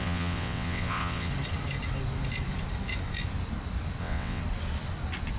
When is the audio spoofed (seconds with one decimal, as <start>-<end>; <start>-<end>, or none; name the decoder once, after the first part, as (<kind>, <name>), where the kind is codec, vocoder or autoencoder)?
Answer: 0.0-1.3 (vocoder, WaveNeXt); 4.0-4.4